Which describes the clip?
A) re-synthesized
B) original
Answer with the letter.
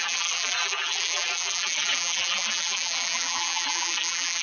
A